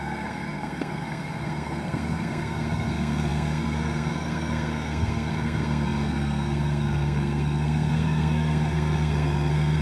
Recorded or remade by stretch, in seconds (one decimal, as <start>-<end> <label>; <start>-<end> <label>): 0.0-9.8 remade